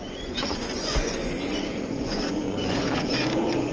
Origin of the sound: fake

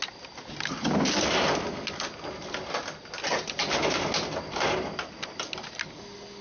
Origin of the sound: real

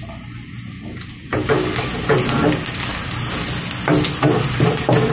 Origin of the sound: real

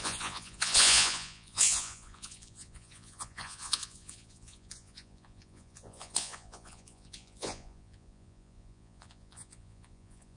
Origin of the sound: fake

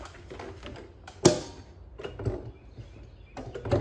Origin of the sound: real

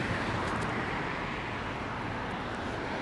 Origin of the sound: real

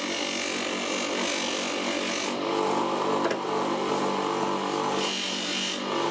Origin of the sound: real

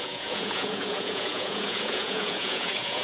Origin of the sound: fake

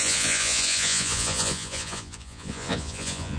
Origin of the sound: fake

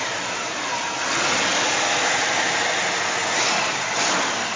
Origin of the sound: real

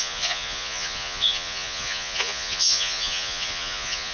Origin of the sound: fake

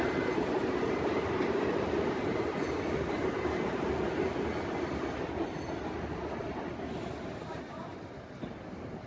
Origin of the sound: real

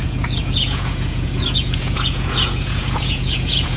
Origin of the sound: fake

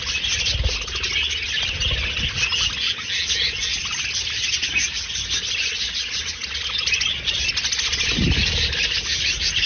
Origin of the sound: real